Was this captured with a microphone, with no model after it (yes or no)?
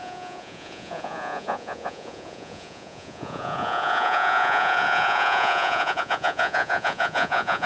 no